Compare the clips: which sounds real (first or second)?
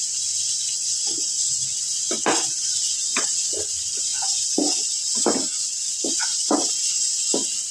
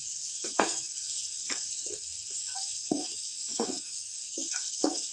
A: first